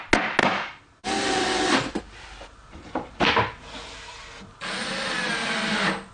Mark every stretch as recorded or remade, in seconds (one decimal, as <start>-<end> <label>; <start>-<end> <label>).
0.0-0.4 recorded; 0.4-2.0 remade; 2.0-6.1 recorded